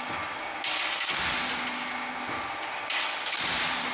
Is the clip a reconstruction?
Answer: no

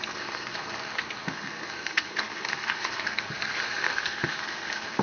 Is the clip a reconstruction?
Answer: yes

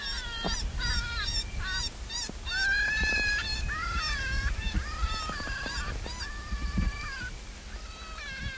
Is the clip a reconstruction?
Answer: no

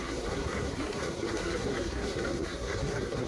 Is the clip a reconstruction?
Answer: yes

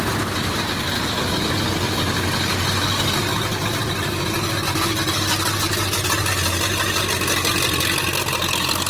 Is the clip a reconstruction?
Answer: no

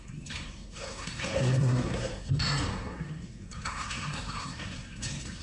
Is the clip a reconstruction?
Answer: yes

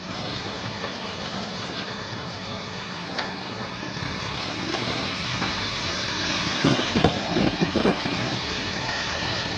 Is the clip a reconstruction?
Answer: yes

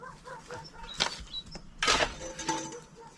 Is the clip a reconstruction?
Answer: no